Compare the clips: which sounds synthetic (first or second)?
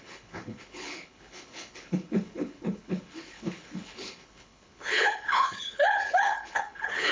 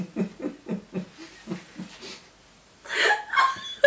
first